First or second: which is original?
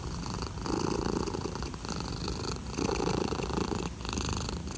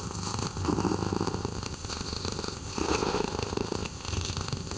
first